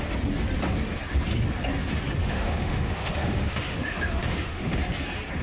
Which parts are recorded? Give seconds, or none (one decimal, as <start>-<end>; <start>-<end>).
0.0-2.2; 4.8-5.4